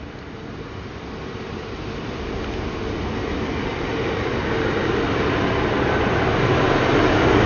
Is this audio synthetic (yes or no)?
no